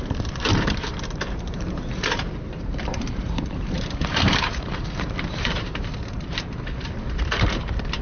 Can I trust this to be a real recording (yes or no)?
no